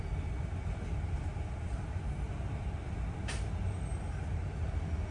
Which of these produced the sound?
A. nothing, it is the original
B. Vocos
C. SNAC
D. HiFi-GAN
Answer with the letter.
A